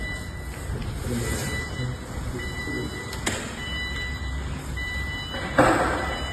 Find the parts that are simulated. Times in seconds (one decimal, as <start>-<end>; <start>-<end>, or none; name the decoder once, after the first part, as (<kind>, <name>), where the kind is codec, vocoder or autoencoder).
1.4-2.6 (vocoder, BigVGAN v2)